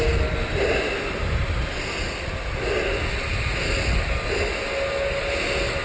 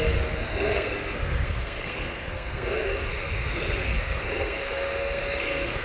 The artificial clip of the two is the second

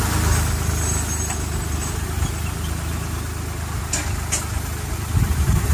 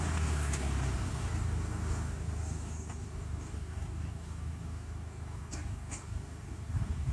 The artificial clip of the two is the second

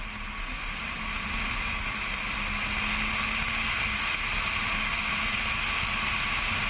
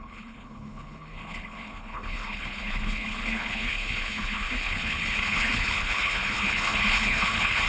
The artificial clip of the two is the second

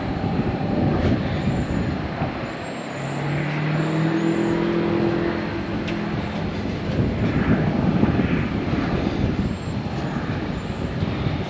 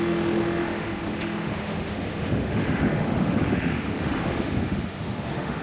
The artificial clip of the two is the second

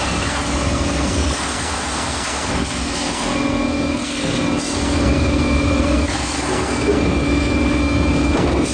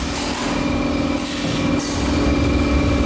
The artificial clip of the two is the first